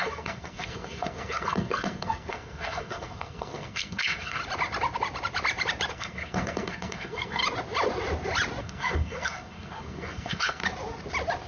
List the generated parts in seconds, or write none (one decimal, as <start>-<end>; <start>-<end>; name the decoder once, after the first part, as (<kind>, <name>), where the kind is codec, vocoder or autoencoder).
0.0-4.4 (codec, SNAC); 5.9-7.4; 8.6-10.6